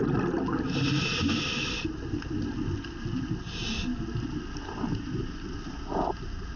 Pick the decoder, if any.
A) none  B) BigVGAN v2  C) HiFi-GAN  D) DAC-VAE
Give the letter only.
A